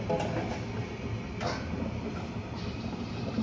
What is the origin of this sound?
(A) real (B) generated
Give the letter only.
A